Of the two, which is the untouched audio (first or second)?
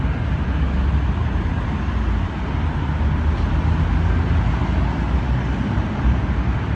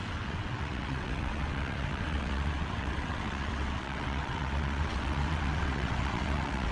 first